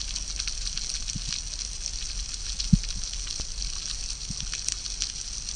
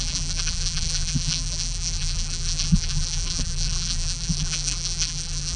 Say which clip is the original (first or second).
first